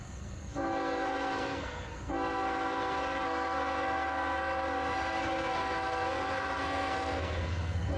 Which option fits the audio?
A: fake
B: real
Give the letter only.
A